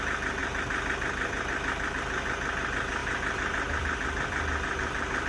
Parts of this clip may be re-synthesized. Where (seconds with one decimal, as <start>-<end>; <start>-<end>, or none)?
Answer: 0.4-1.9; 3.0-5.3